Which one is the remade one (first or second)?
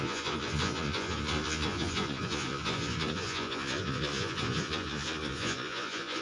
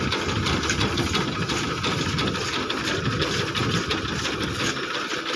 first